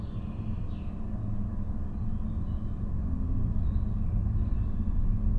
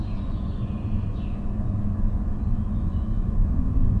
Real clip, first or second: first